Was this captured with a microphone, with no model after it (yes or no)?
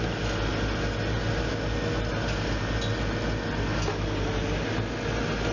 yes